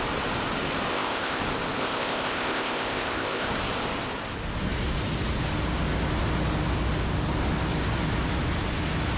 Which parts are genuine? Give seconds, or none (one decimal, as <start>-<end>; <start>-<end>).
0.0-0.9; 1.4-1.8; 3.5-9.2